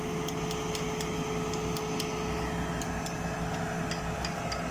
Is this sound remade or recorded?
recorded